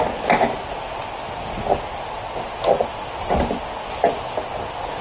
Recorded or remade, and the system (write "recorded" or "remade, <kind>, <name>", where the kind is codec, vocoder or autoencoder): recorded